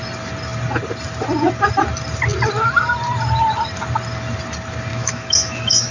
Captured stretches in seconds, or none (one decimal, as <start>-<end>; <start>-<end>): 0.0-4.9